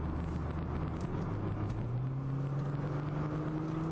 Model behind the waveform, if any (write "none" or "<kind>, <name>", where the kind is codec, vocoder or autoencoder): none